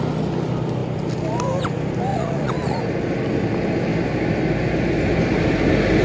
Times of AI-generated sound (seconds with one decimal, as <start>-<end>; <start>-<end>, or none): 2.1-2.8